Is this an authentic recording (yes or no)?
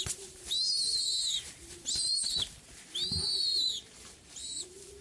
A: no